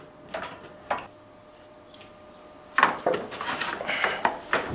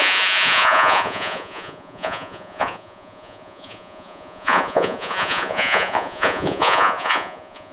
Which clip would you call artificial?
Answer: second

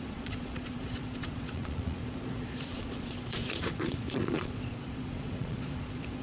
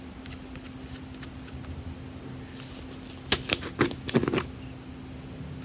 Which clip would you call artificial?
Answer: first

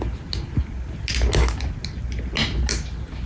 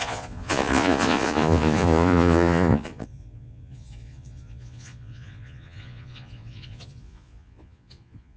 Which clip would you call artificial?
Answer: second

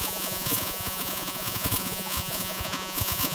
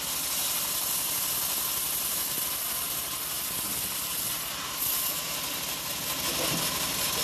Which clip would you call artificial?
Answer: first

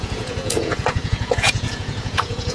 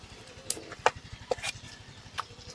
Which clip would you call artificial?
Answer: first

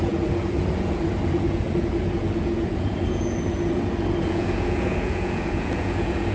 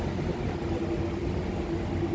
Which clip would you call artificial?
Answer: first